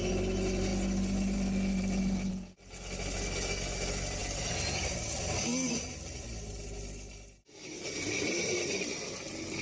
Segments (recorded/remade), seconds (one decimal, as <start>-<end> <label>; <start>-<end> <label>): 0.0-9.6 recorded